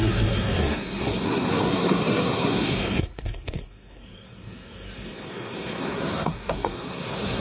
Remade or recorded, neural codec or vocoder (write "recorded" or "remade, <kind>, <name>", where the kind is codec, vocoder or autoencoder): remade, codec, SNAC